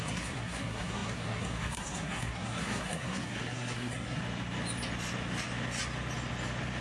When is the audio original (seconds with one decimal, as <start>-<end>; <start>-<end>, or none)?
4.2-6.8